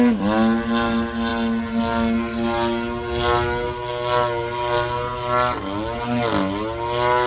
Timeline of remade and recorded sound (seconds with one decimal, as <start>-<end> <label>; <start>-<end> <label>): 0.0-7.3 recorded